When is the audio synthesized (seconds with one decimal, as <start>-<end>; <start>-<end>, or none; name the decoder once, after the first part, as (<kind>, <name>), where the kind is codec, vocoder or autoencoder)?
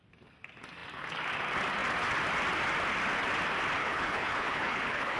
3.8-5.2 (codec, HILCodec)